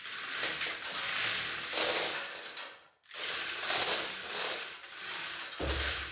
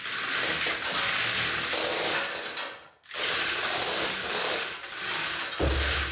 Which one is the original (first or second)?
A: second